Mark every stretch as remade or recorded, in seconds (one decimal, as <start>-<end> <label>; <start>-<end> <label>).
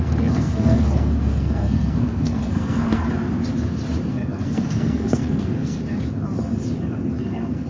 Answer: 0.0-3.0 remade; 3.0-4.1 recorded; 4.1-5.8 remade; 5.8-7.2 recorded; 7.2-7.7 remade